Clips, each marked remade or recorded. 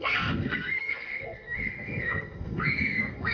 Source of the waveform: remade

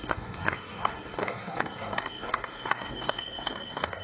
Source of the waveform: remade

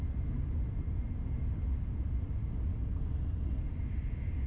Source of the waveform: recorded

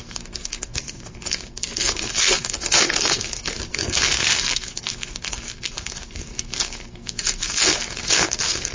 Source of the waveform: remade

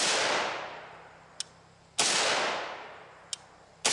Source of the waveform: recorded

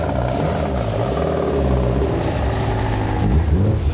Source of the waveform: recorded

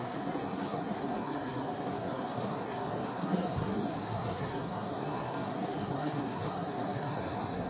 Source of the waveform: remade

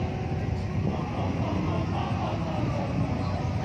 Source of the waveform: recorded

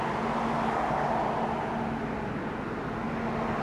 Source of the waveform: recorded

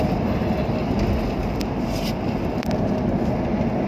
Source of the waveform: recorded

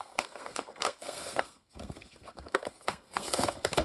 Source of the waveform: remade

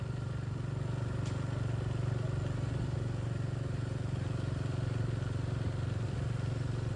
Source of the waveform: recorded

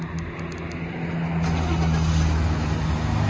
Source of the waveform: recorded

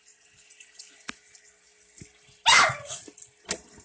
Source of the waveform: recorded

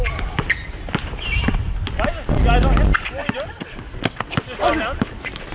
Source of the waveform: recorded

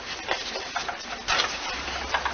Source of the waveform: recorded